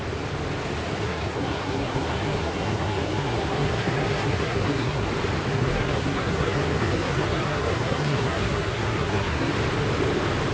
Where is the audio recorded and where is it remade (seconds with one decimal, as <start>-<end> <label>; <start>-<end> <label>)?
0.0-1.0 recorded; 1.0-5.1 remade; 5.1-5.5 recorded; 5.5-9.5 remade; 9.5-10.5 recorded